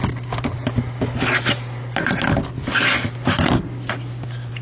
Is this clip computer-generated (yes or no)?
no